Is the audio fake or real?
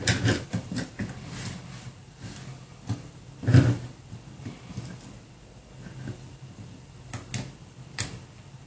real